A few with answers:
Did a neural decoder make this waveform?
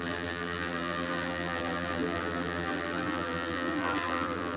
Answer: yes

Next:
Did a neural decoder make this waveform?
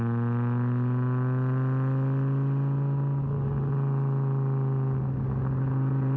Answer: no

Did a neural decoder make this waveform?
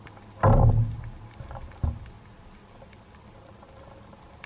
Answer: no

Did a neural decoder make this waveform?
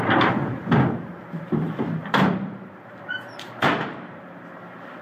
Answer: yes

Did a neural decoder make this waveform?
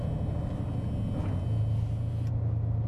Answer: no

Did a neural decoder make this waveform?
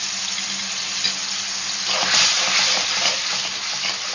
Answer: no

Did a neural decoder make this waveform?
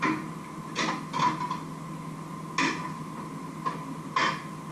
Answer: no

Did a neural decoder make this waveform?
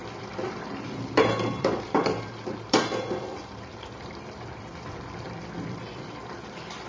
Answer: yes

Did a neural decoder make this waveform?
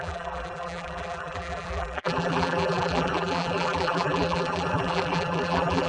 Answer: yes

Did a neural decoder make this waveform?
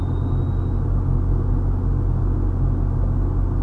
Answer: no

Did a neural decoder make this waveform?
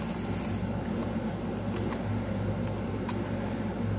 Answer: no